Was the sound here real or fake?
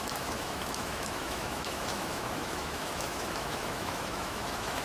fake